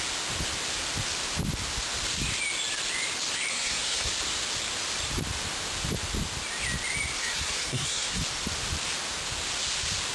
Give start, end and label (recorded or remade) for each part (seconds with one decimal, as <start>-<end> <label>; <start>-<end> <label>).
0.0-3.5 recorded; 3.5-4.1 remade; 4.1-7.2 recorded; 7.2-8.2 remade; 8.2-10.1 recorded